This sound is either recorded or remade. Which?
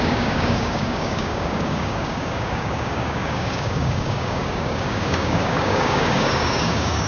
remade